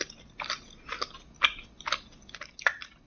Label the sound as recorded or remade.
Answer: recorded